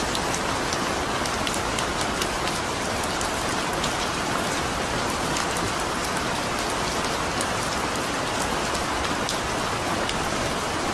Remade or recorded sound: recorded